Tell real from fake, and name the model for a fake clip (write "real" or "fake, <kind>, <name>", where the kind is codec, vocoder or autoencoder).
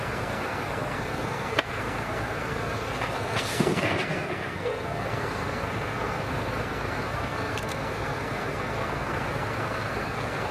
fake, codec, SNAC